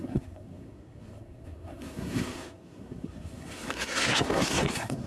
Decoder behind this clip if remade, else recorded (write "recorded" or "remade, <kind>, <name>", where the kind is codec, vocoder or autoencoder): remade, codec, SNAC